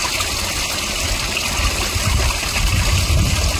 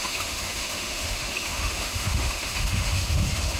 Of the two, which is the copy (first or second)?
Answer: second